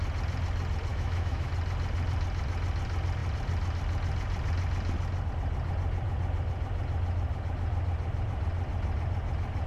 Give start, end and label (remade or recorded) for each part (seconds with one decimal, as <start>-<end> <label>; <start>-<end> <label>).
0.0-0.9 recorded; 0.9-1.5 remade; 1.5-9.7 recorded